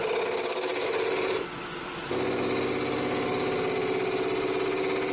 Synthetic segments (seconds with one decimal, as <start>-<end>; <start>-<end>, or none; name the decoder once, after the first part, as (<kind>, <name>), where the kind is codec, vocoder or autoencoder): none